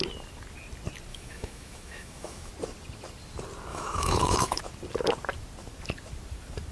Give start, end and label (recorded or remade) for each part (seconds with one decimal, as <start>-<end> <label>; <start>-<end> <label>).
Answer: 0.0-1.1 recorded; 1.1-2.5 remade; 2.5-3.7 recorded; 3.7-4.6 remade; 4.6-6.7 recorded